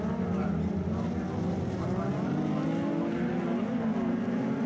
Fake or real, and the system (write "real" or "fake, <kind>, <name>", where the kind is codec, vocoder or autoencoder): real